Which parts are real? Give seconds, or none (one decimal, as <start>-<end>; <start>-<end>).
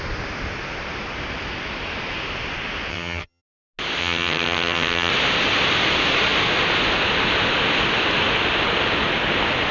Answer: 0.0-2.9; 3.4-4.0; 5.1-9.7